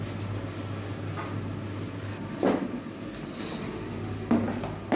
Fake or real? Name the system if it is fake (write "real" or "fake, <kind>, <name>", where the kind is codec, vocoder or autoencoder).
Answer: real